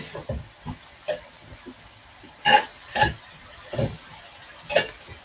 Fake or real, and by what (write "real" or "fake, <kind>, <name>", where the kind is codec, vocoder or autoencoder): fake, vocoder, BigVGAN v2